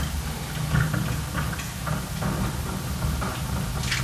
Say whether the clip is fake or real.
real